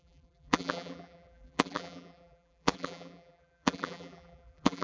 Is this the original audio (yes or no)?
no